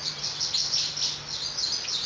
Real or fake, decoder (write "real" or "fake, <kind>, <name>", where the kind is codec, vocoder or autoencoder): real